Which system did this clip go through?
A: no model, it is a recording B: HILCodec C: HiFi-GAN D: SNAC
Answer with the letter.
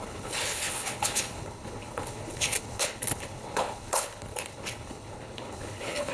B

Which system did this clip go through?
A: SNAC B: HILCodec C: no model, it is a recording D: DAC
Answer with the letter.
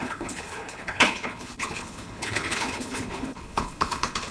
B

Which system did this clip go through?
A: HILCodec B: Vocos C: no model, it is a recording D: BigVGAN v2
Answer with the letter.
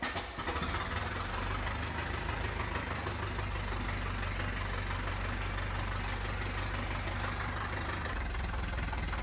C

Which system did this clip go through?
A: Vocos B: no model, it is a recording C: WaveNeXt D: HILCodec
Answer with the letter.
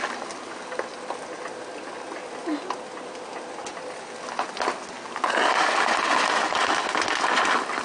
B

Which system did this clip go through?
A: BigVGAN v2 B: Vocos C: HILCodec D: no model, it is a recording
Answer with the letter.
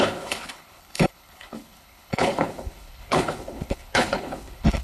C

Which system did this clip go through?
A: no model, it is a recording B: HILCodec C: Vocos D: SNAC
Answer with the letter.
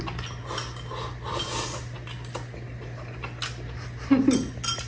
A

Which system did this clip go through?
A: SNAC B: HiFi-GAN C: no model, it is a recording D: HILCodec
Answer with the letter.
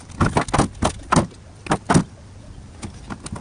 C